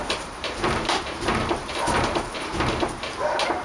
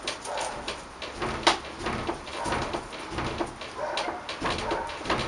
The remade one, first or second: first